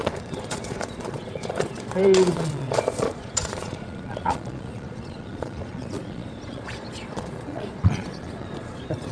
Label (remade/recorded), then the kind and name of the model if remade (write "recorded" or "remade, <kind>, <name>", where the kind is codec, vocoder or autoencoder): remade, vocoder, Vocos